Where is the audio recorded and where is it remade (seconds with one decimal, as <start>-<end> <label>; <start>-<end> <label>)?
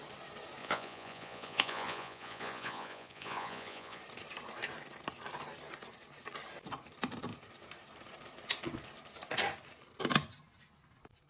0.0-0.6 recorded; 0.6-4.0 remade; 4.0-11.3 recorded